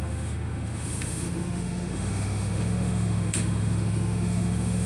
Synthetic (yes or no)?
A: yes